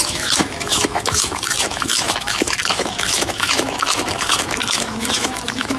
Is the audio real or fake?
fake